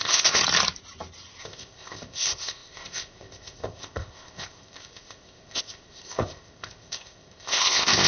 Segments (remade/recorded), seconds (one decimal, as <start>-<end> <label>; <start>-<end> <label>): 0.0-0.4 remade; 0.4-1.4 recorded; 1.4-8.1 remade